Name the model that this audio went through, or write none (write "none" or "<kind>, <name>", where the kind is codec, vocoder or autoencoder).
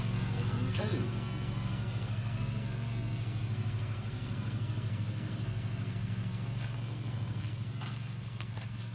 codec, SNAC